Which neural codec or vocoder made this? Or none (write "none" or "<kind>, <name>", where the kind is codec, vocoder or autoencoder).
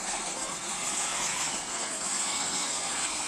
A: codec, SNAC